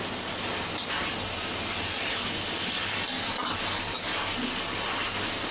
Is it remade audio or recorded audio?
recorded